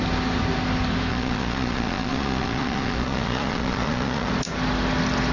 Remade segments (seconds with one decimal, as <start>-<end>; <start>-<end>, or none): 1.1-4.3